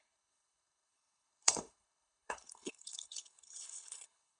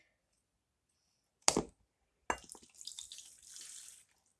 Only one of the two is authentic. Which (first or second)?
second